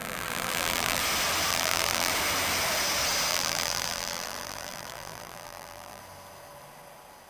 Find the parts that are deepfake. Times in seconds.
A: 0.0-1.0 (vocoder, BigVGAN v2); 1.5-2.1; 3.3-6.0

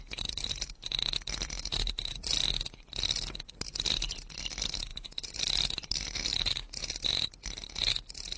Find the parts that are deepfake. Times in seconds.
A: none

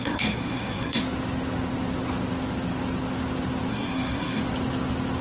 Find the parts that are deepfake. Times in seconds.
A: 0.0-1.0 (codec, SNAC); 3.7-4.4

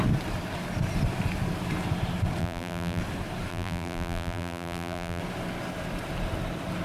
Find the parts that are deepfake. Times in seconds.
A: 2.4-3.0 (vocoder, BigVGAN v2); 3.5-5.2

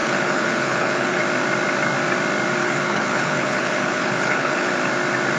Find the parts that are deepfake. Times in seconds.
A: 0.0-1.2 (codec, HILCodec); 2.6-4.7